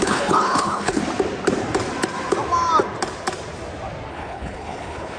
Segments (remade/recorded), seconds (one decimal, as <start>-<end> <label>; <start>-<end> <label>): 0.0-1.0 remade; 1.0-4.1 recorded; 4.1-5.2 remade